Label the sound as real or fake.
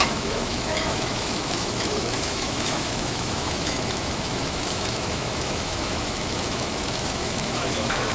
fake